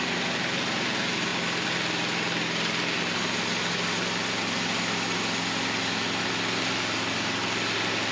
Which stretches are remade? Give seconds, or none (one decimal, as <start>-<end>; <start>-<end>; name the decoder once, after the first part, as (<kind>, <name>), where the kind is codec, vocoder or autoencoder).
none